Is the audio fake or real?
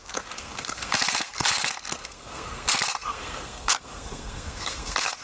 fake